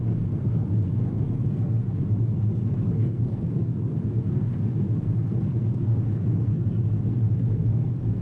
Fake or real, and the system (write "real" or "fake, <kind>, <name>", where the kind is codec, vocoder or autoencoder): fake, codec, SNAC